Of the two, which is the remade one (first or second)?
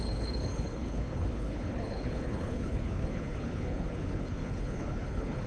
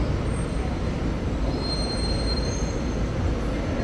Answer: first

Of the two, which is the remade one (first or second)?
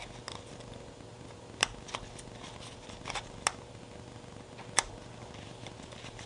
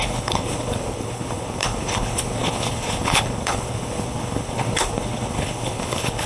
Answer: second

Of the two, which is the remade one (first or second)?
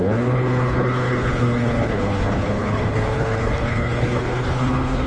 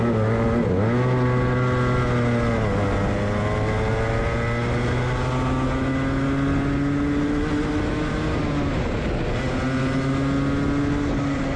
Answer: first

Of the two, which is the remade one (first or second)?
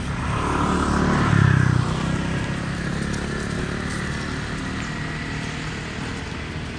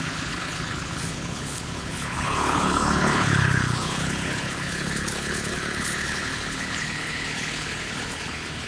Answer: second